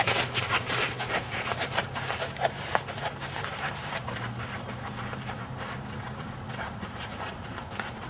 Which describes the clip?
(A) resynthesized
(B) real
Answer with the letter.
A